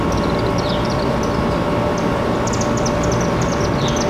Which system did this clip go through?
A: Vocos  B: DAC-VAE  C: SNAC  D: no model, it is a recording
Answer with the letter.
D